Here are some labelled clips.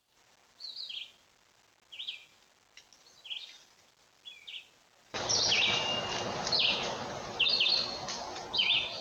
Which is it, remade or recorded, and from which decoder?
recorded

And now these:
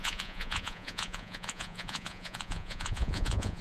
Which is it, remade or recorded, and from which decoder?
remade, vocoder, Vocos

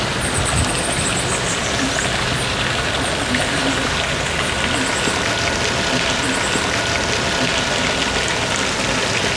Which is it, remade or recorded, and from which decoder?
recorded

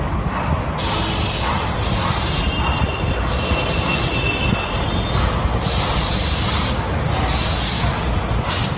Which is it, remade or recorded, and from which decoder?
recorded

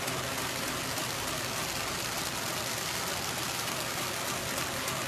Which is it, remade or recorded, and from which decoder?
recorded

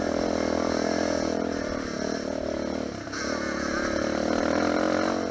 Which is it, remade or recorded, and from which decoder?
recorded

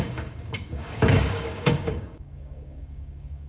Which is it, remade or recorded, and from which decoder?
remade, codec, DAC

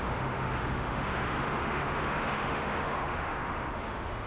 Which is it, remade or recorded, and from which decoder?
remade, autoencoder, DAC-VAE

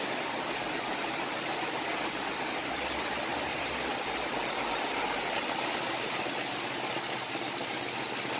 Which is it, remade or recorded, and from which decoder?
recorded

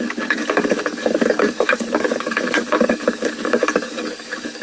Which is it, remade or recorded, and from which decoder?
remade, codec, DAC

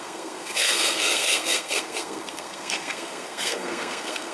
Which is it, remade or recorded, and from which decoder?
remade, codec, SNAC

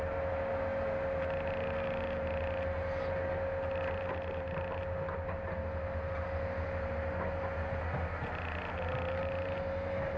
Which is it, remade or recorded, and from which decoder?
recorded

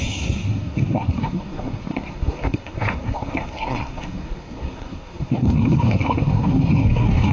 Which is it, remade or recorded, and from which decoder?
remade, codec, SNAC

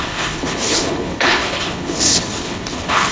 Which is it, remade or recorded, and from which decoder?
remade, codec, HILCodec